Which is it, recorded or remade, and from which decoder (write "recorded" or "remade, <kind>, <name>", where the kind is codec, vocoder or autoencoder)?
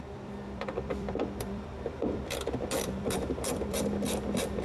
remade, vocoder, BigVGAN v2